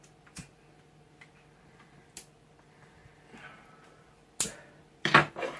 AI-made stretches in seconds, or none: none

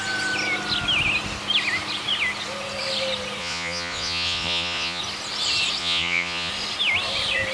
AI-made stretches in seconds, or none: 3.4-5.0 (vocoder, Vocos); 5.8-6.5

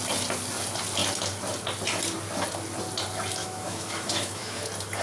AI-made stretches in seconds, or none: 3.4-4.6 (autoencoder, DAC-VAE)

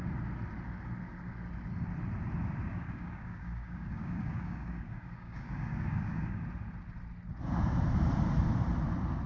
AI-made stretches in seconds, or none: 2.7-6.4 (codec, DAC)

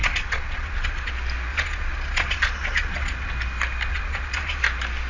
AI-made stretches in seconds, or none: 0.0-1.1 (vocoder, Vocos); 1.5-3.3; 3.9-4.6

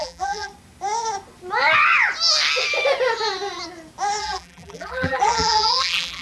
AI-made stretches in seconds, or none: 0.0-0.5 (vocoder, BigVGAN v2); 4.2-6.2